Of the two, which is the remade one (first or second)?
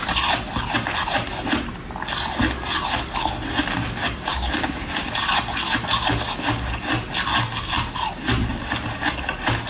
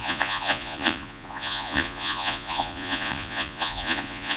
second